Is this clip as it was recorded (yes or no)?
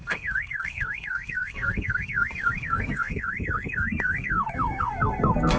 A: no